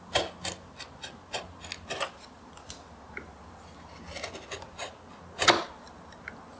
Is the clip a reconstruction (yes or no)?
no